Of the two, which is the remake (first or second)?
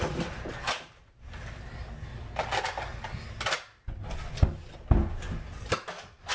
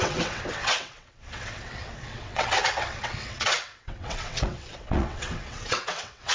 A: second